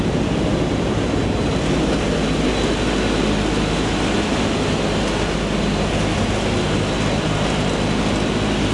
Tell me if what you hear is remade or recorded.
recorded